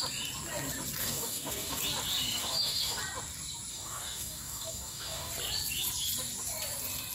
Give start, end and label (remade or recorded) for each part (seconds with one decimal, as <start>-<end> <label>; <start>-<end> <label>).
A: 0.0-1.0 recorded; 1.0-1.8 remade; 1.8-2.4 recorded; 2.4-3.0 remade; 3.0-3.7 recorded; 3.7-5.3 remade; 5.3-7.1 recorded